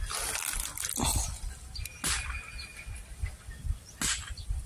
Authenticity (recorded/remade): recorded